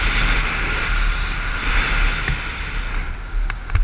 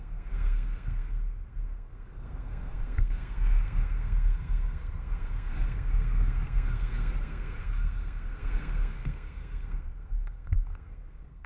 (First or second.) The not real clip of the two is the second